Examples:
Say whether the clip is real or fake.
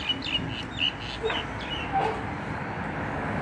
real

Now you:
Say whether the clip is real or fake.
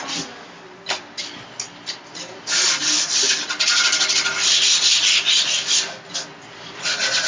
real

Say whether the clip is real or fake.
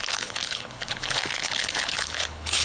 fake